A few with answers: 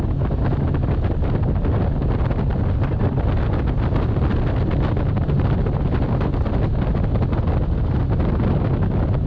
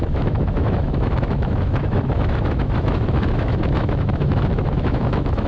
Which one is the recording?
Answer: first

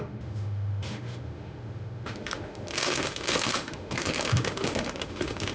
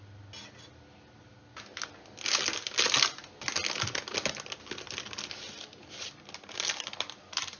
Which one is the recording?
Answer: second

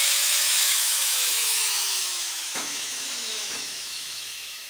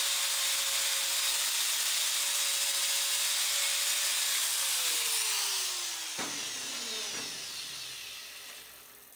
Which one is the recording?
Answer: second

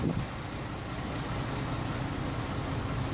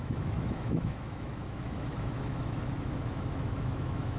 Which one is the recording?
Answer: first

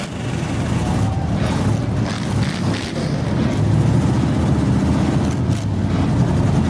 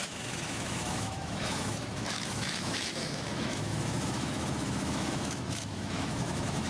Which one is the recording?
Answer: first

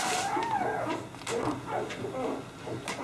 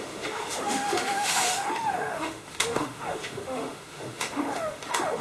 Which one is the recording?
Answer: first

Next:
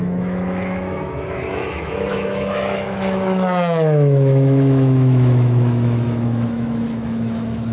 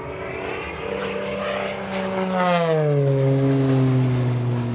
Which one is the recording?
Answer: second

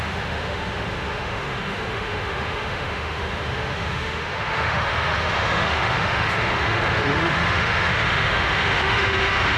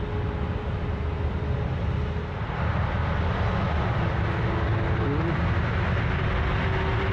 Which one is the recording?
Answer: second